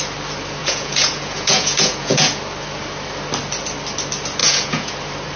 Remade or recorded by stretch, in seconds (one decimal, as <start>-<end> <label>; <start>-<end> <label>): 0.0-0.6 recorded; 0.6-2.4 remade; 2.4-4.4 recorded; 4.4-4.9 remade; 4.9-5.4 recorded